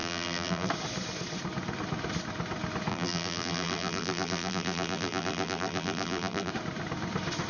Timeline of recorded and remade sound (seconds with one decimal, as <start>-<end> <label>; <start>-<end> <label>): 0.0-0.7 remade; 0.7-2.9 recorded; 2.9-6.5 remade; 6.5-7.5 recorded